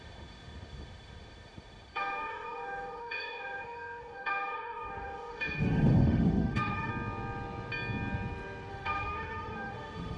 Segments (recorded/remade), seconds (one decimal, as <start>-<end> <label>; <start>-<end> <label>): 0.0-6.9 remade; 6.9-8.7 recorded; 8.7-10.2 remade